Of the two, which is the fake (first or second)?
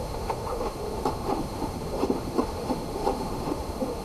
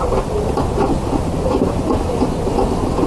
first